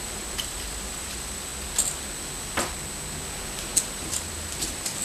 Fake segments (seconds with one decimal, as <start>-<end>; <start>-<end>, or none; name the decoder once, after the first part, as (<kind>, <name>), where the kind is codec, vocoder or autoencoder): 0.0-1.5 (vocoder, BigVGAN v2); 4.0-5.0